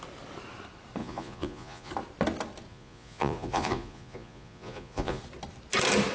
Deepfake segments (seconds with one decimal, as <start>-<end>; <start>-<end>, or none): 1.0-1.9; 2.7-5.2